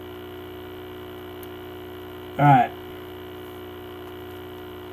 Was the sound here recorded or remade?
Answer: recorded